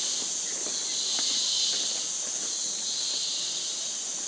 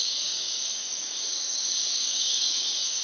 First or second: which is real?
first